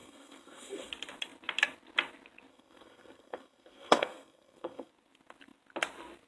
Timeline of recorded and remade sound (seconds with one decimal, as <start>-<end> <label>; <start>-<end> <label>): 0.0-0.9 remade; 0.9-2.5 recorded; 2.5-4.9 remade; 4.9-6.3 recorded